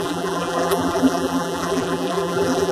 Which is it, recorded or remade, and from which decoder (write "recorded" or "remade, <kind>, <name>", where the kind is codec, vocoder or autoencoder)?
remade, vocoder, BigVGAN v2